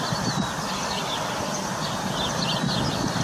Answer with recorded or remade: recorded